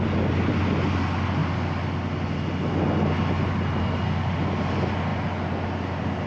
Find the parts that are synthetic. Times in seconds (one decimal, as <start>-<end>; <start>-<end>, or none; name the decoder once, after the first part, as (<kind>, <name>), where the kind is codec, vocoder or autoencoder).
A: none